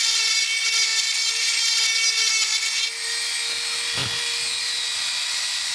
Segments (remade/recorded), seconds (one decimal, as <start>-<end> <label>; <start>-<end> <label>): 0.0-5.7 recorded